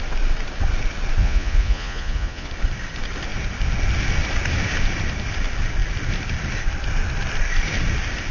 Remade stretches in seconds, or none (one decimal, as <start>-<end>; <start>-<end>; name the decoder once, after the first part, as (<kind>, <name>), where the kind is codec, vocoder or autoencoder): 1.2-2.5 (vocoder, Vocos)